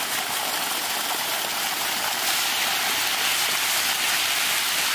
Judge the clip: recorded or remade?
recorded